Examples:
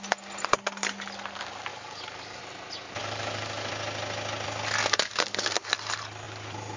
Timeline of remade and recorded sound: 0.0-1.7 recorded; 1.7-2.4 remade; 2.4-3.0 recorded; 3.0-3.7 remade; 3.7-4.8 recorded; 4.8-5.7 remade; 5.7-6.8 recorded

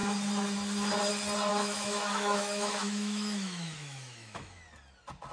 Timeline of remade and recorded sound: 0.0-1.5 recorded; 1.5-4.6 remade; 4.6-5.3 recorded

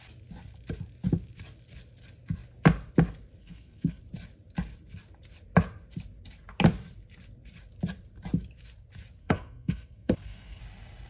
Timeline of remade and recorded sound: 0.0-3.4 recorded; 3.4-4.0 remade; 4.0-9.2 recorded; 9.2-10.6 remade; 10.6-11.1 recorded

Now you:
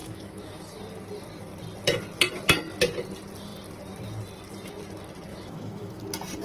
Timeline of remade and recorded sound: 0.0-0.8 remade; 0.8-5.3 recorded; 5.3-6.0 remade; 6.0-6.4 recorded

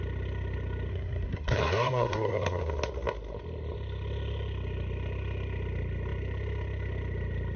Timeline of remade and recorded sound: 0.0-0.9 recorded; 0.9-2.6 remade; 2.6-7.6 recorded

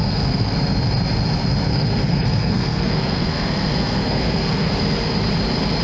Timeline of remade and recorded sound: 0.0-0.5 remade; 0.5-1.7 recorded; 1.7-4.7 remade; 4.7-5.8 recorded

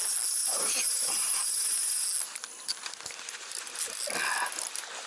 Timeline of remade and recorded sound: 0.0-5.1 recorded

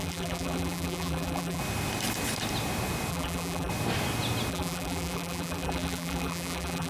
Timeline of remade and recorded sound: 0.0-1.6 remade; 1.6-3.1 recorded; 3.1-3.7 remade; 3.7-4.5 recorded; 4.5-6.9 remade